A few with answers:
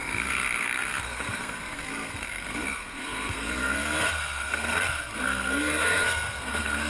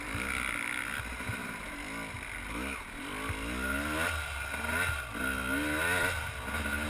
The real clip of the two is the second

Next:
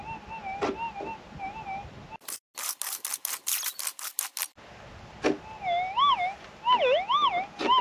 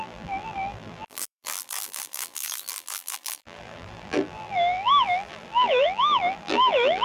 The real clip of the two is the first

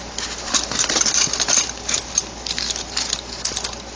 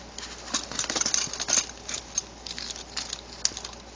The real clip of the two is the second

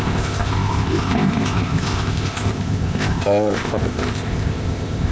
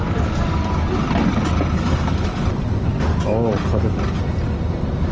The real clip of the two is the second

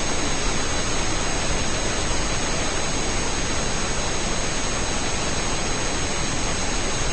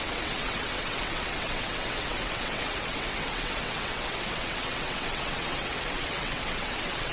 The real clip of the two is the first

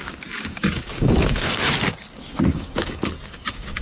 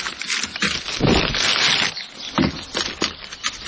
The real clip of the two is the second